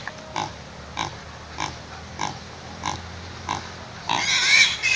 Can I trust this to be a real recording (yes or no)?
yes